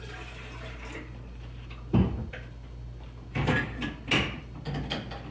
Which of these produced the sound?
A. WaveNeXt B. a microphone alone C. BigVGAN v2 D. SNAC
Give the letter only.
B